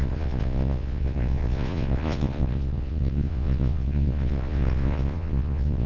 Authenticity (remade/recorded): remade